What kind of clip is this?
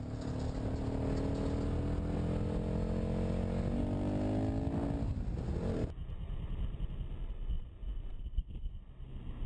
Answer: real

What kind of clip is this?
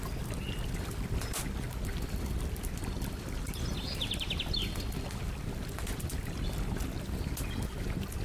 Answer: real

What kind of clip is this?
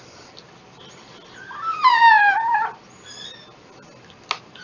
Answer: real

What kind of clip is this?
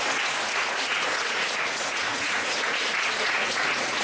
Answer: fake